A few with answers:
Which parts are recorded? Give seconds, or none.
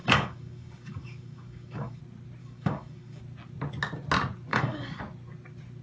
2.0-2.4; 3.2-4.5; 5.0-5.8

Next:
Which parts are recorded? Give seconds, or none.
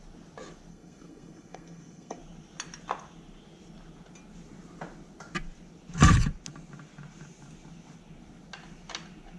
0.0-0.7; 2.2-9.4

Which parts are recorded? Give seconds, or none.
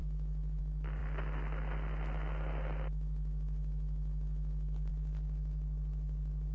0.0-6.5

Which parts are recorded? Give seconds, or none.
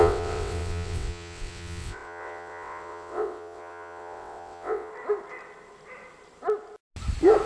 4.9-7.5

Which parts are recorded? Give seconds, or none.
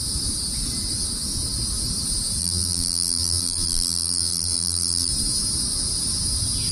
0.0-2.4; 5.1-6.7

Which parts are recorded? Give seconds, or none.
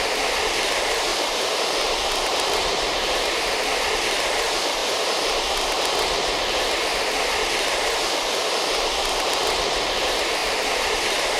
0.0-1.1; 3.4-4.8; 5.3-10.4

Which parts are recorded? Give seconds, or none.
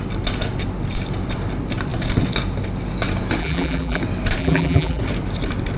0.0-3.4; 4.0-4.4; 5.0-5.8